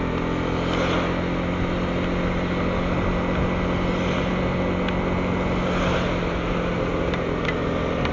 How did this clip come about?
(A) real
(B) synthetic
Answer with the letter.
A